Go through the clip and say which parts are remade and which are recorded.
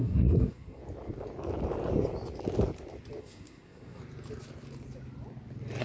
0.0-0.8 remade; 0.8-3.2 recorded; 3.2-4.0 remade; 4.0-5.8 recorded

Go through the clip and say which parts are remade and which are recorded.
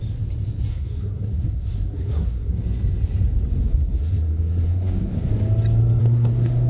0.0-0.7 recorded; 0.7-2.5 remade; 2.5-3.7 recorded; 3.7-5.3 remade; 5.3-6.0 recorded; 6.0-6.7 remade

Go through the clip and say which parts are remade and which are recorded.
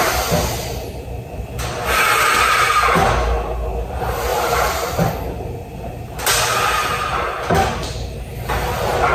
0.0-4.3 recorded; 4.3-5.1 remade; 5.1-9.1 recorded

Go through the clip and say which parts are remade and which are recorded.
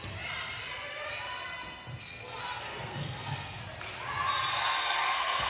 0.0-2.0 recorded; 2.0-3.6 remade; 3.6-4.5 recorded; 4.5-5.5 remade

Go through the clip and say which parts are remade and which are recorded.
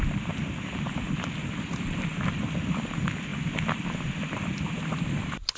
0.0-5.6 recorded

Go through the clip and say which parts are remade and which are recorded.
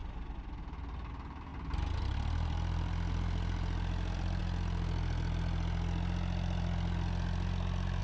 0.0-1.5 remade; 1.5-2.0 recorded; 2.0-4.4 remade; 4.4-8.0 recorded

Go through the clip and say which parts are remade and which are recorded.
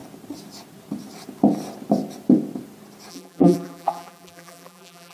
0.0-3.1 recorded; 3.1-5.1 remade